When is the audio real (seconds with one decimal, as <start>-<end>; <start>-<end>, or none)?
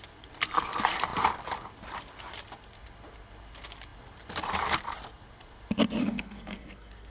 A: 0.0-6.0